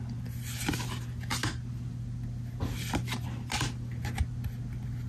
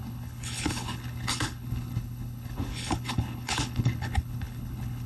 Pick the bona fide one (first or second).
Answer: first